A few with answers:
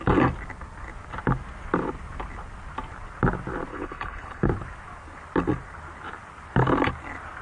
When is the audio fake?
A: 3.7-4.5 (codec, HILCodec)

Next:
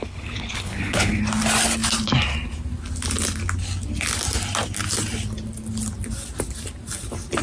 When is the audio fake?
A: 0.0-1.2 (codec, HILCodec)

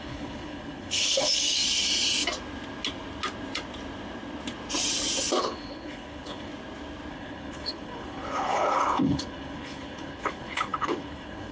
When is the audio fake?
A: 0.0-1.6 (codec, HILCodec); 5.4-6.5; 7.1-11.5

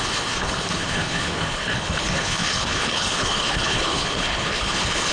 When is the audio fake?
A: 0.0-5.1 (codec, HILCodec)

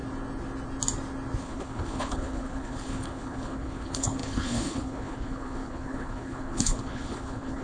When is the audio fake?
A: 1.4-7.6 (codec, HILCodec)

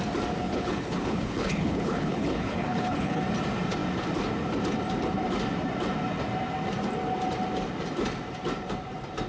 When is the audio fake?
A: 0.4-3.2 (codec, HILCodec)

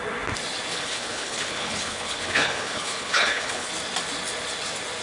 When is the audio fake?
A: 0.7-3.7 (codec, HILCodec)

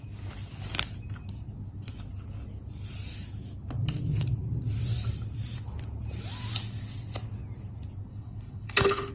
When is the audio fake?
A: 8.1-9.1 (codec, HILCodec)